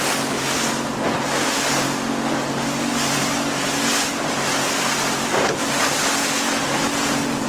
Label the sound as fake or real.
real